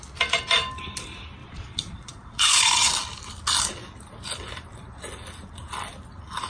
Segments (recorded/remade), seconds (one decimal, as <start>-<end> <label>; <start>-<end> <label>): 0.0-1.4 recorded; 1.4-2.9 remade; 2.9-6.5 recorded